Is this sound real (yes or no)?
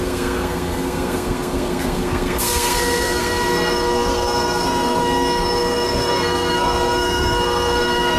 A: no